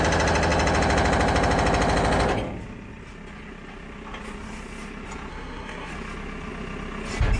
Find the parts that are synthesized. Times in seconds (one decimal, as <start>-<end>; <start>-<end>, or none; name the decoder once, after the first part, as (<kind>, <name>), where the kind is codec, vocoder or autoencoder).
5.3-5.9 (codec, SNAC)